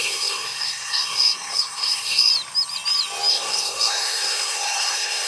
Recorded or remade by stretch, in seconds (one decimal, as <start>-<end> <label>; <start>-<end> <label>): 0.0-2.3 remade; 2.3-3.3 recorded; 3.3-5.3 remade